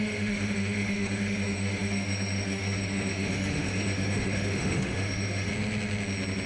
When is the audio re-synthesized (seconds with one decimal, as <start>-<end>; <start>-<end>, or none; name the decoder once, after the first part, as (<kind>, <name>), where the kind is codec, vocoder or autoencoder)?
0.0-5.5 (autoencoder, DAC-VAE)

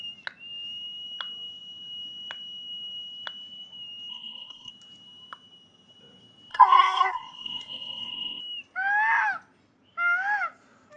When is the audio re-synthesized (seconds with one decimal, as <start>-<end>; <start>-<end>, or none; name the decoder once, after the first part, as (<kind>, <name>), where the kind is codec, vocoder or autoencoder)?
4.1-4.7 (codec, SNAC); 6.5-8.4